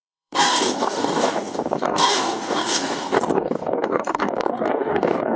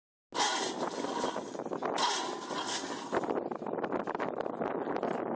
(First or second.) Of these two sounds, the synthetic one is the first